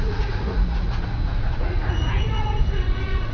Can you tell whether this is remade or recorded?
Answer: remade